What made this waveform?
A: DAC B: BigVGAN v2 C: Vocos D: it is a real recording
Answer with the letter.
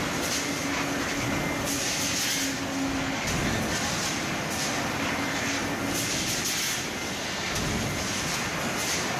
D